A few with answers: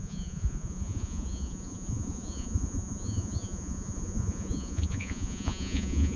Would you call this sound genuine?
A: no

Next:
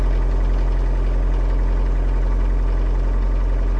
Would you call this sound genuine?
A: yes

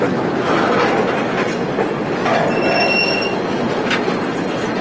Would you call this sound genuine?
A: yes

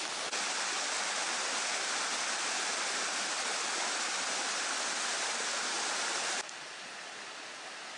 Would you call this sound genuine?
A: yes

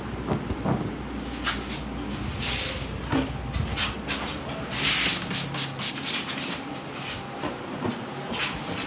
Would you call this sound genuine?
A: yes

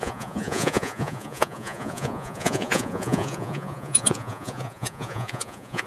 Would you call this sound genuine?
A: no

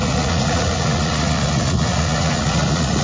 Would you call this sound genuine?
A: no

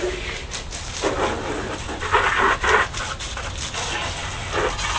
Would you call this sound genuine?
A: yes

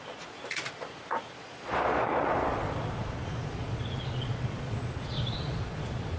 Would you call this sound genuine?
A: no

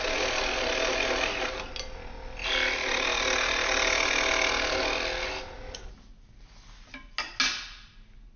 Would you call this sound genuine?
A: yes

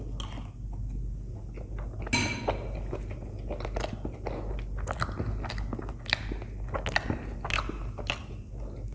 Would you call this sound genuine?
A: yes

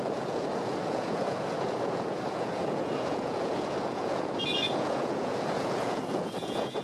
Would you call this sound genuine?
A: no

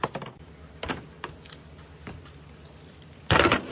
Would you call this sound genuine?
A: yes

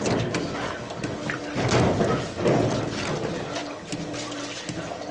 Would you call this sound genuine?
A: yes